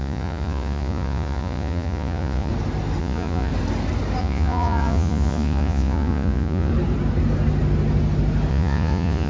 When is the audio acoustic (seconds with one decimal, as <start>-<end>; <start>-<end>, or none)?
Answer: 2.5-3.0; 3.5-4.2; 6.7-8.5